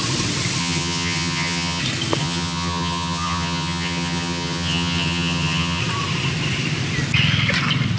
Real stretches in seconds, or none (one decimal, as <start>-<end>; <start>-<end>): 0.0-0.6; 1.8-2.2; 5.8-8.0